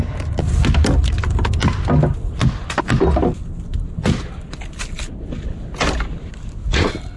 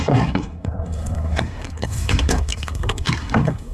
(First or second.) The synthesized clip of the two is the second